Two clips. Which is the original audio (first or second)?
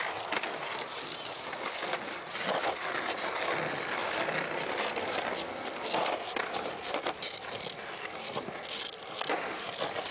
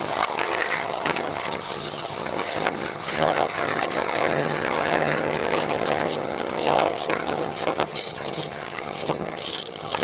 first